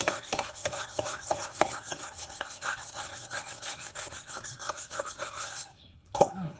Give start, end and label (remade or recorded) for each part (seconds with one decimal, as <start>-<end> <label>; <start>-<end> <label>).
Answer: 0.0-6.6 remade